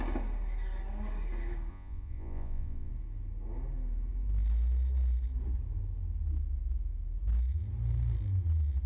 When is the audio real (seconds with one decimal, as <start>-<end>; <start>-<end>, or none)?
0.0-1.7; 2.9-8.9